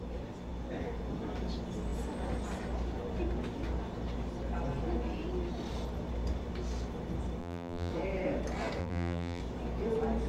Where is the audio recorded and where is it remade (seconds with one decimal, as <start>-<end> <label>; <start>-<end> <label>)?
0.0-7.4 recorded; 7.4-7.9 remade; 7.9-8.8 recorded; 8.8-9.4 remade; 9.4-10.3 recorded